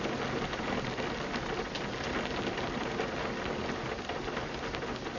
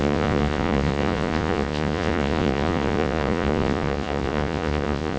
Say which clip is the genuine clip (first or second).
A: first